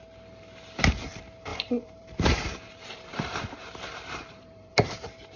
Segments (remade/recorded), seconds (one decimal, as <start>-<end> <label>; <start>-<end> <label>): 0.0-1.5 recorded; 1.5-4.7 remade; 4.7-5.4 recorded